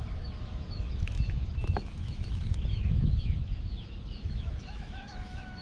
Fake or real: fake